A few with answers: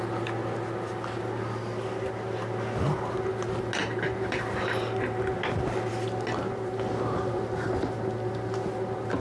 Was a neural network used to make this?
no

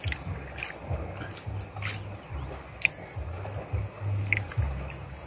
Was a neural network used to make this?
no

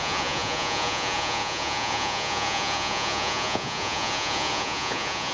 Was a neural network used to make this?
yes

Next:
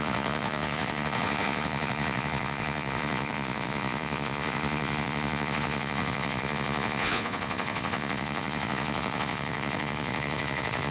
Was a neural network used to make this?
yes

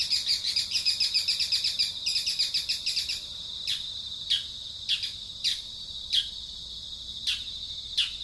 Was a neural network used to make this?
no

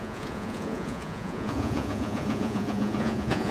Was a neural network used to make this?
yes